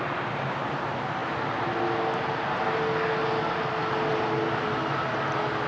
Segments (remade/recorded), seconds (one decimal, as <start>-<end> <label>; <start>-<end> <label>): 0.0-5.7 recorded